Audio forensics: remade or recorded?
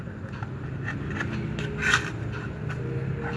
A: recorded